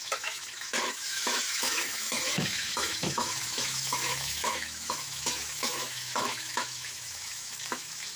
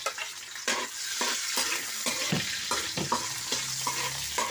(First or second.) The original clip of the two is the second